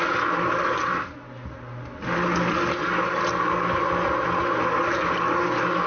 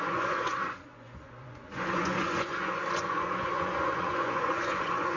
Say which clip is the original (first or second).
first